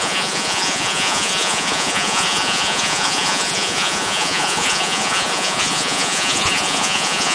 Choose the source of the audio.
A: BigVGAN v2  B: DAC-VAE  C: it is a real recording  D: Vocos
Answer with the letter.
D